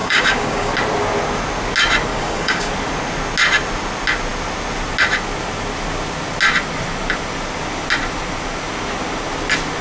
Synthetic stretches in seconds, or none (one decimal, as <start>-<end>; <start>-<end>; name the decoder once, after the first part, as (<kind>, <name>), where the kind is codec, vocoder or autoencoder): 0.0-0.7 (codec, DAC); 2.1-2.7

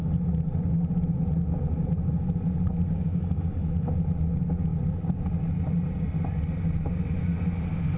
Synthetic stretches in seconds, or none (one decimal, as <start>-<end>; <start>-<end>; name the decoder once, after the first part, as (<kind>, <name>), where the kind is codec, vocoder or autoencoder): 2.8-3.4 (codec, DAC)

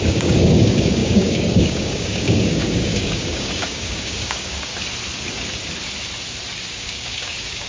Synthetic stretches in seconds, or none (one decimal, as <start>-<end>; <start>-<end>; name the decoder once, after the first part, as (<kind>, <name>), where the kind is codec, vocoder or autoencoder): 0.0-4.7 (codec, DAC); 6.7-7.7

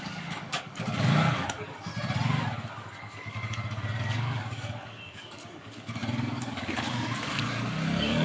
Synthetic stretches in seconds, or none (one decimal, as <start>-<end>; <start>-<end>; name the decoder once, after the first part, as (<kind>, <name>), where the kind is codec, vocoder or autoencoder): 0.0-1.9 (codec, DAC); 2.9-8.2

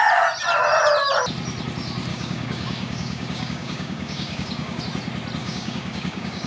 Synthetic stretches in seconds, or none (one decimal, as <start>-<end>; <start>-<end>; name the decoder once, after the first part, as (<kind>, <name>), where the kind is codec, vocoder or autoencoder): 2.1-4.8 (codec, DAC); 5.4-6.5

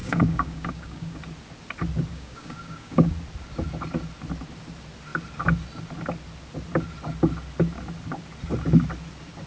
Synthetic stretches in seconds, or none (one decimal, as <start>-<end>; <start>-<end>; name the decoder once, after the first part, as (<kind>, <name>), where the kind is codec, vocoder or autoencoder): 0.0-1.2 (codec, DAC); 2.1-3.1

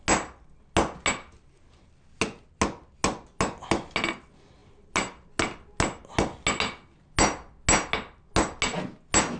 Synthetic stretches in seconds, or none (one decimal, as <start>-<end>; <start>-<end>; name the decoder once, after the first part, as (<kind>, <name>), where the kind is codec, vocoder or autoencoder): none